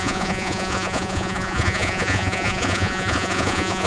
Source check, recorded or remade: remade